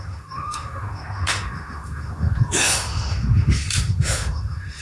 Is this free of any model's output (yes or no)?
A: no